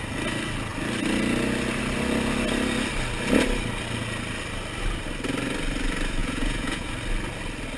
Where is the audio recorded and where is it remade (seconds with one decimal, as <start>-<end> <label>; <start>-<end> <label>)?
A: 0.0-6.2 recorded; 6.2-6.9 remade; 6.9-7.8 recorded